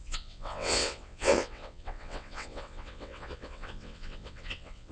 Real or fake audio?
fake